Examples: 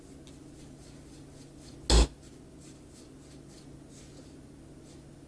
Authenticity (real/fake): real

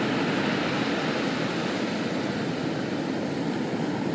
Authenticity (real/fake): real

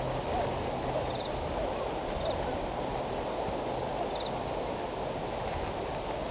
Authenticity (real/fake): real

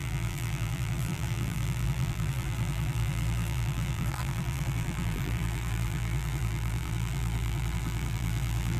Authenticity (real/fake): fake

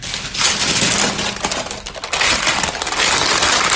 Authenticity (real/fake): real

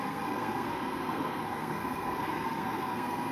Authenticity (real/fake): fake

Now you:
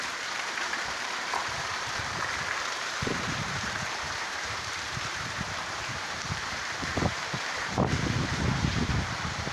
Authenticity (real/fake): fake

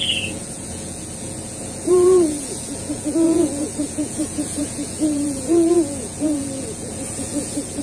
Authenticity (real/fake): fake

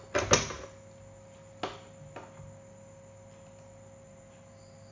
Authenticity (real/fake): real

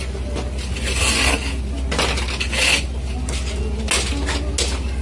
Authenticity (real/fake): real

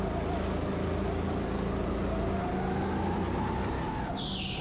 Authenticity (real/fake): real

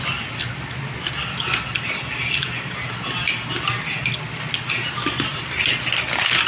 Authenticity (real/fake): real